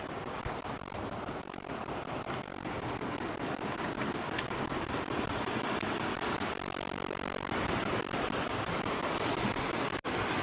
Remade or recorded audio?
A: recorded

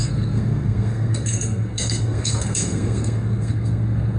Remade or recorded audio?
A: remade